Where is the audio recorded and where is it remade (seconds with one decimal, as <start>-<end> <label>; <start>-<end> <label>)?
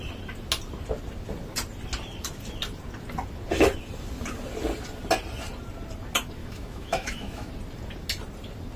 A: 0.0-6.4 recorded; 6.4-7.5 remade; 7.5-8.8 recorded